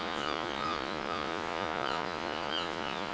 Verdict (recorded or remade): remade